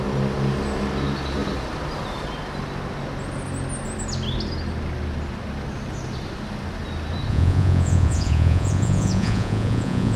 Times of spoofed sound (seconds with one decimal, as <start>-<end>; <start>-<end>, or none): 7.3-10.2